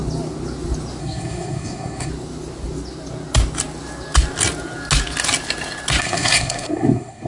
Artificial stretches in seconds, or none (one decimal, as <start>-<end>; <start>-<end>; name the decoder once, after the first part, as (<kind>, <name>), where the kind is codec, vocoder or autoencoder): 1.0-2.1 (codec, SNAC); 6.0-7.3